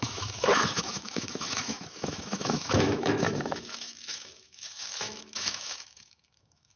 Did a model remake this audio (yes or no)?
yes